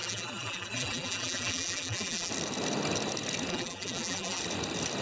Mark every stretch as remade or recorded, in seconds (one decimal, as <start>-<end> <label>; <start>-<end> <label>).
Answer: 0.0-2.3 remade; 2.3-3.5 recorded; 3.5-4.4 remade; 4.4-5.0 recorded